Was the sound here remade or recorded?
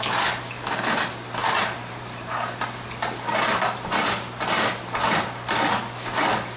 recorded